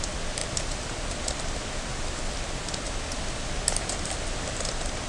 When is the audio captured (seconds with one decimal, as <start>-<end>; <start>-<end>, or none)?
0.0-5.1